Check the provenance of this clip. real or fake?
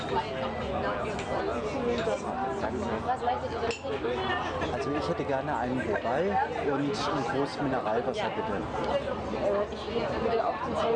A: real